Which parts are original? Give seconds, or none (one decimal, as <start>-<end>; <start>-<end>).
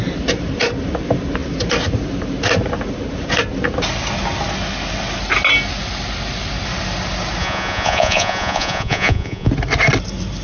0.0-7.4; 9.5-10.4